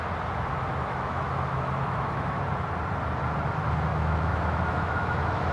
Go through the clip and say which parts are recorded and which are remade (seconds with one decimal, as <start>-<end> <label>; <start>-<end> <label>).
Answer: 0.0-0.8 recorded; 0.8-2.4 remade; 2.4-3.9 recorded; 3.9-5.5 remade